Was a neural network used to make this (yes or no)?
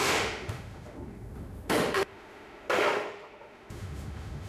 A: yes